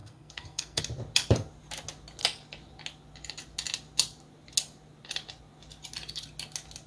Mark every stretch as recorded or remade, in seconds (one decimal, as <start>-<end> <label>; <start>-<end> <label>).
0.0-0.8 remade; 0.8-6.9 recorded